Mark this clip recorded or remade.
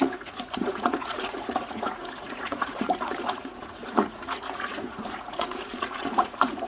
remade